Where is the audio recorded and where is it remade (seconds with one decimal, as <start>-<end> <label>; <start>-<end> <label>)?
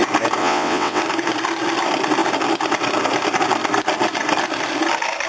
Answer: 0.0-0.4 recorded; 0.4-1.0 remade; 1.0-5.3 recorded